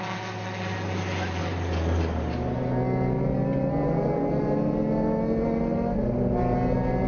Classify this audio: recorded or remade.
recorded